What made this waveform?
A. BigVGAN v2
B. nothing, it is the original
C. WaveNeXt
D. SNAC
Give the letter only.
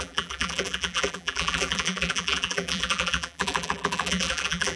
A